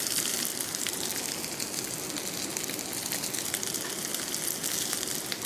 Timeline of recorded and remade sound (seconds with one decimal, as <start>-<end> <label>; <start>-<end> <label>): 0.0-0.5 recorded; 0.5-1.8 remade; 1.8-5.5 recorded